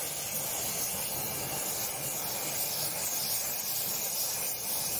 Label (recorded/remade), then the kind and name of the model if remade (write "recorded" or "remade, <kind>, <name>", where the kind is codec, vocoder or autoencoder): recorded